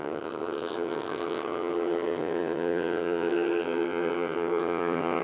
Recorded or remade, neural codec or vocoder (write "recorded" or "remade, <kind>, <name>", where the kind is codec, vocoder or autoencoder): remade, vocoder, HiFi-GAN